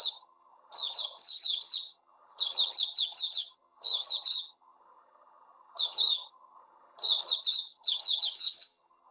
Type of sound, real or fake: fake